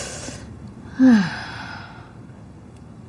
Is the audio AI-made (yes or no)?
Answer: yes